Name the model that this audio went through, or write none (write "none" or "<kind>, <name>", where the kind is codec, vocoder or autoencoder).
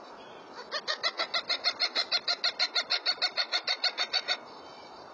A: none